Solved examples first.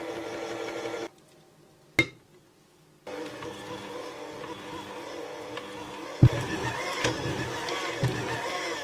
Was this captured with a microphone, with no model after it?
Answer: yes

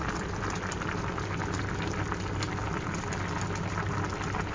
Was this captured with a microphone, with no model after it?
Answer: yes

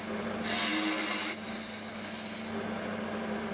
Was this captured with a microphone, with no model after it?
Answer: yes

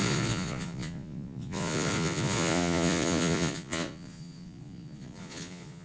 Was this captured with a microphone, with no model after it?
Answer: no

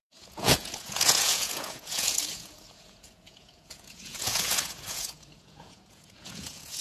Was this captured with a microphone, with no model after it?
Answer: no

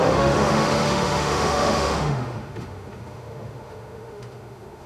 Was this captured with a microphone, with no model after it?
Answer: no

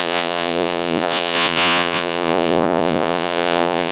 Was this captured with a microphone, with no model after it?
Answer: no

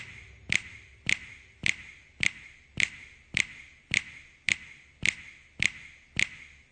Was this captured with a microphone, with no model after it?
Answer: yes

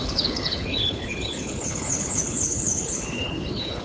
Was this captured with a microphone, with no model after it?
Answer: no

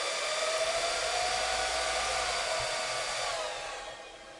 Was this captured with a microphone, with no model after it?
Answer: yes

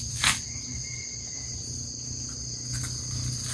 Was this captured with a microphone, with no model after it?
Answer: yes